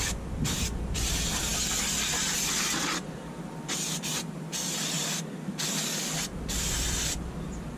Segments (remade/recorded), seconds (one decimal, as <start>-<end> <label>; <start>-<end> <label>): 0.0-7.8 recorded